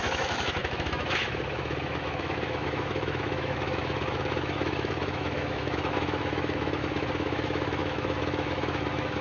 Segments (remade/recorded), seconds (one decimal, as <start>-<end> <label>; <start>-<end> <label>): 0.0-9.2 remade